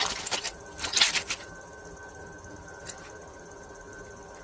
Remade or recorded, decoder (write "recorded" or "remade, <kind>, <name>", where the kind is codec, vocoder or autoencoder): recorded